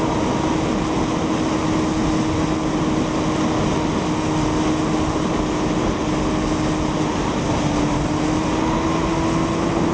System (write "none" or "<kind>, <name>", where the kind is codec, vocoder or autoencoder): none